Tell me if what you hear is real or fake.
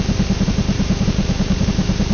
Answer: fake